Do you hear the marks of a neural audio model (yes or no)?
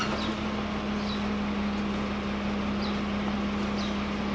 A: no